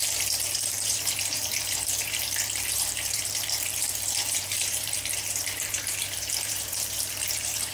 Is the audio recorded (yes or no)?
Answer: no